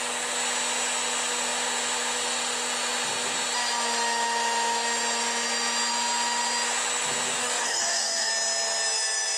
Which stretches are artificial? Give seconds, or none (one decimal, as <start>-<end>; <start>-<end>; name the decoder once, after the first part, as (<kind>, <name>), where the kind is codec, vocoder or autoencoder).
7.4-8.3 (codec, DAC)